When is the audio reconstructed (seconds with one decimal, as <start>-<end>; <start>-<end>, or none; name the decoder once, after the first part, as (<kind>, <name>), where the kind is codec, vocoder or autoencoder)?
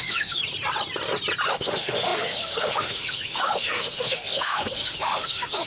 0.0-0.4 (autoencoder, DAC-VAE); 1.5-5.7